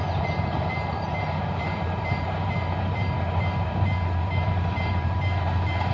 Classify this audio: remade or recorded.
remade